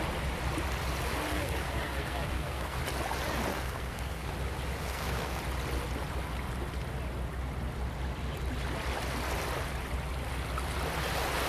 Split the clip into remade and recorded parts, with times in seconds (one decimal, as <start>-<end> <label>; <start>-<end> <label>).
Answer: 0.0-1.3 recorded; 1.3-2.8 remade; 2.8-3.5 recorded; 3.5-4.3 remade; 4.3-4.8 recorded; 4.8-5.4 remade; 5.4-11.5 recorded

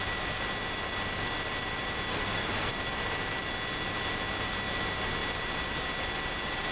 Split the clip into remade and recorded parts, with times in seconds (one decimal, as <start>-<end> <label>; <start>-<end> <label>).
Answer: 0.0-2.1 recorded; 2.1-2.7 remade; 2.7-6.7 recorded

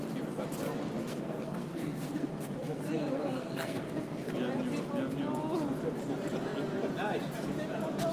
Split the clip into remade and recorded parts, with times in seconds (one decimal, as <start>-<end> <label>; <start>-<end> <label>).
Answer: 0.0-1.0 recorded; 1.0-4.3 remade; 4.3-8.1 recorded